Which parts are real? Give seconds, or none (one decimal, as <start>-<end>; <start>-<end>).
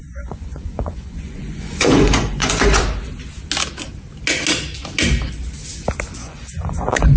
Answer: 2.8-6.2